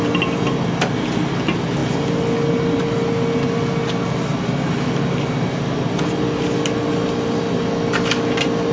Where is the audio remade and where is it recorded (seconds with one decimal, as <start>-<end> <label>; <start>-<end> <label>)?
0.0-8.7 recorded